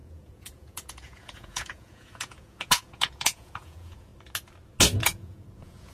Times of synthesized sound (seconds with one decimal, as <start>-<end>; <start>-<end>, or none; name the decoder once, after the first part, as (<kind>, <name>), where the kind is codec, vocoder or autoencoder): 0.0-4.1 (vocoder, Vocos); 5.0-5.9